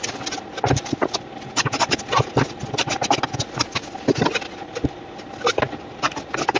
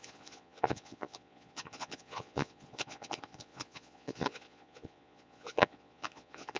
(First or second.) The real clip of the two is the first